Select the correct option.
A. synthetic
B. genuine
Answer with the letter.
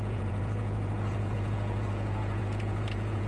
A